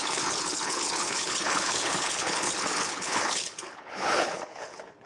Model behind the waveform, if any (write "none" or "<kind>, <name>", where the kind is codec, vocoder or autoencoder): codec, HILCodec